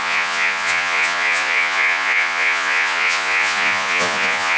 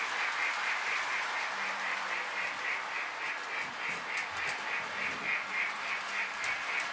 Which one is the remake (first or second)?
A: first